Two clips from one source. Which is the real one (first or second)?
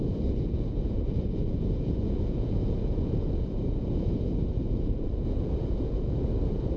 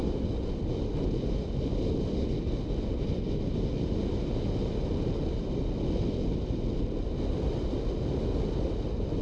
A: second